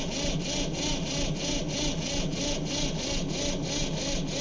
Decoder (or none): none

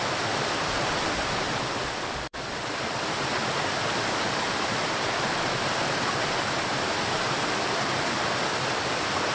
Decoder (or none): none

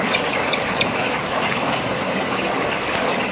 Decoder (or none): codec, DAC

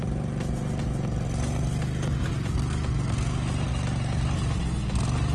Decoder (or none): none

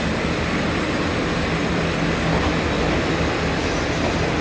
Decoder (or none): none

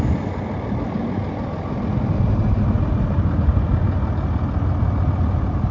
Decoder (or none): none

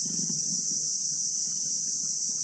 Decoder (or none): none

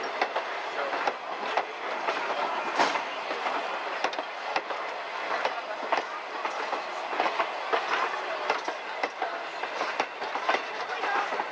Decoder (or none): none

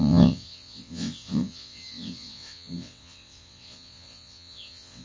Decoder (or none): vocoder, WaveNeXt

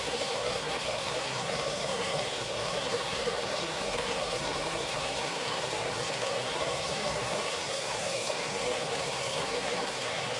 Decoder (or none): codec, SNAC